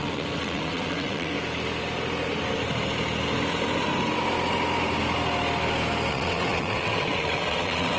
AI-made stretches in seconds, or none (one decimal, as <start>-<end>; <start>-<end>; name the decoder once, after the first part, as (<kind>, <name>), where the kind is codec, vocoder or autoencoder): 0.0-1.3 (vocoder, WaveNeXt); 6.1-8.0